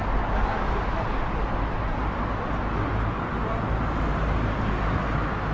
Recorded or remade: recorded